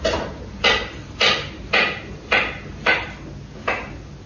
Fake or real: real